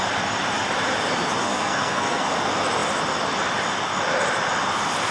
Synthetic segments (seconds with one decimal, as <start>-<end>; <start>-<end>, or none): 1.4-2.3